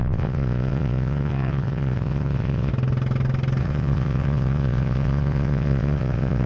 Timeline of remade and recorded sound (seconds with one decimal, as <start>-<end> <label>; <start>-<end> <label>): 0.0-2.7 remade; 2.7-3.6 recorded; 3.6-6.5 remade